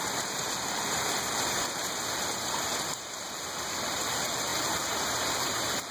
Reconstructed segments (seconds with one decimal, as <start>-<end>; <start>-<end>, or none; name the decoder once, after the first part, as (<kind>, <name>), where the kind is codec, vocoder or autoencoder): 0.0-5.9 (vocoder, BigVGAN v2)